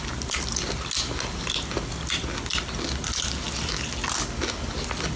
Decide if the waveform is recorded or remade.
recorded